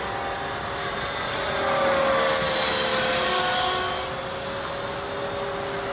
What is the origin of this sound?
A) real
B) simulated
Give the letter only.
A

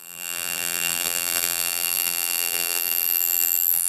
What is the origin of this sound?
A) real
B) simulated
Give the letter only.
B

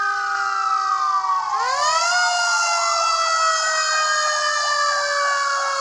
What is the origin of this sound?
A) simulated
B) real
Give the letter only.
B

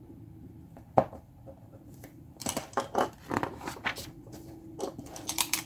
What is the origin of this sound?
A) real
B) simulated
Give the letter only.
B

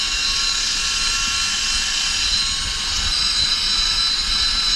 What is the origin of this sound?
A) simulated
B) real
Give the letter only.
B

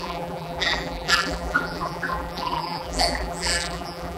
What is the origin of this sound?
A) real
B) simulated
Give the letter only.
B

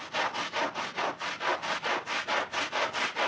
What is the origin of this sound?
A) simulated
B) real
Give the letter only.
B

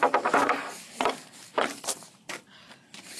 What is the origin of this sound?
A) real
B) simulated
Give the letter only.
A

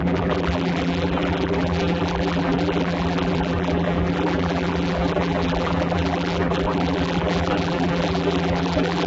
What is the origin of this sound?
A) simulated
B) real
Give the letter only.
A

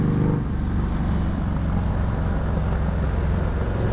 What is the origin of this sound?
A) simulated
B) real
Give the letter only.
B